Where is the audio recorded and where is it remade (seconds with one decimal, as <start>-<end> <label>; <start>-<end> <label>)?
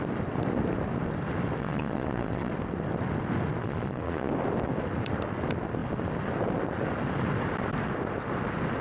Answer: 0.0-1.6 recorded; 1.6-2.5 remade; 2.5-3.6 recorded; 3.6-4.3 remade; 4.3-8.8 recorded